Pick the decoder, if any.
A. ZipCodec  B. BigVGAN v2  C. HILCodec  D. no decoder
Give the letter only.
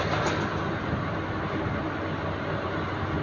D